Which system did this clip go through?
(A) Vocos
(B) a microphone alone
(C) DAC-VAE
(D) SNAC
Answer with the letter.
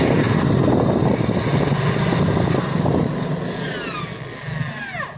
B